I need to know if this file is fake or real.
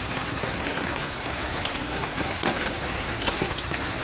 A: fake